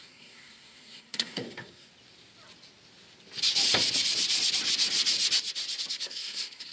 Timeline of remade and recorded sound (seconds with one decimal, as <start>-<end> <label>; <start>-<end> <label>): 0.0-1.9 remade; 1.9-5.9 recorded; 5.9-6.7 remade